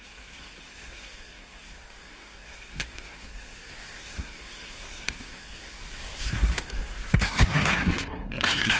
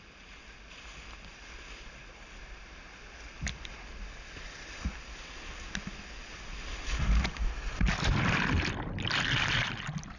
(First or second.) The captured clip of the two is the second